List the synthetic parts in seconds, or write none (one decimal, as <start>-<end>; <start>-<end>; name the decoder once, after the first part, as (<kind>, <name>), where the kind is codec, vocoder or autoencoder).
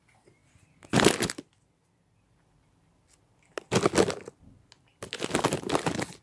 none